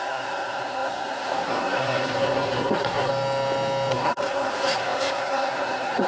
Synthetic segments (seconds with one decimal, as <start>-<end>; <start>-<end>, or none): 0.0-3.1; 3.9-6.1